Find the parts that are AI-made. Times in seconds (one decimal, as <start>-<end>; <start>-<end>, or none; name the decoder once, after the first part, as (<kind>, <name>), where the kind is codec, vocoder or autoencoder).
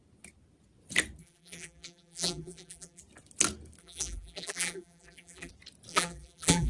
1.2-3.0 (vocoder, BigVGAN v2); 3.8-5.5; 5.9-6.7